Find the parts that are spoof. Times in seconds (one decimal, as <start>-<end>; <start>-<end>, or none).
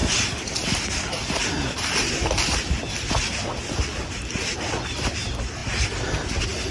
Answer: none